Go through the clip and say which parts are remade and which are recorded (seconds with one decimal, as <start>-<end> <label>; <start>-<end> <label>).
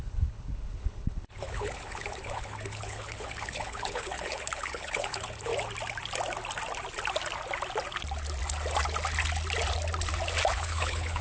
0.0-5.5 remade; 5.5-10.5 recorded; 10.5-11.2 remade